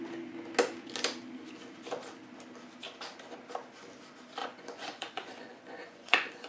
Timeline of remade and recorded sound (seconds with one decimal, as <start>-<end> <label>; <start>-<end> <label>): 0.0-4.4 recorded; 4.4-6.5 remade